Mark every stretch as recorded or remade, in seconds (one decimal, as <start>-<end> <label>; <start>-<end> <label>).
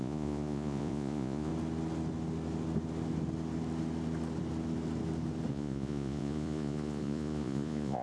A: 0.0-1.5 remade; 1.5-5.5 recorded; 5.5-8.0 remade